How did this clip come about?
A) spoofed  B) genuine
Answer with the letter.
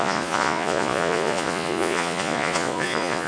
A